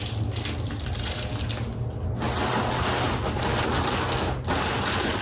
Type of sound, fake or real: real